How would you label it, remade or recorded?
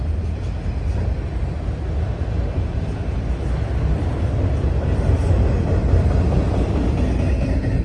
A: recorded